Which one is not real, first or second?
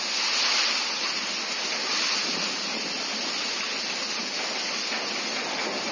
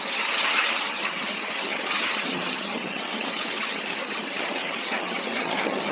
second